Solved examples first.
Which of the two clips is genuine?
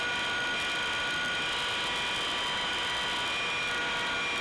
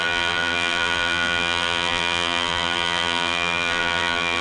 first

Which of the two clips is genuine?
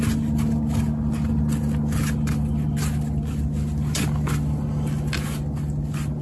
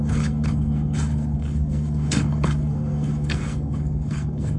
first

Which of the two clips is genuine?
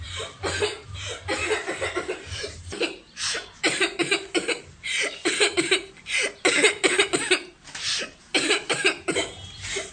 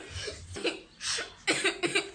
second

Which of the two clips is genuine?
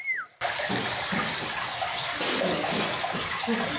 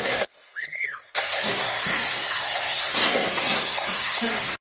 first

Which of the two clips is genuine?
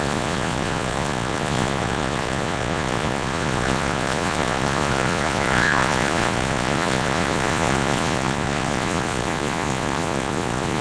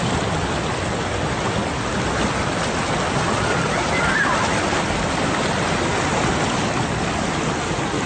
second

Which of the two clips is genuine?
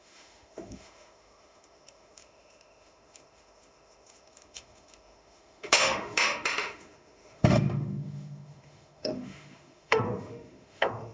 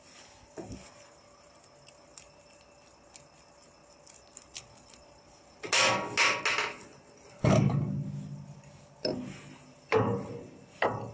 second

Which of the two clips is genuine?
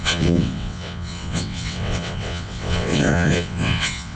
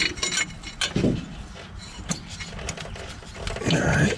second